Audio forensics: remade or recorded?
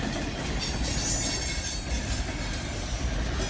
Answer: recorded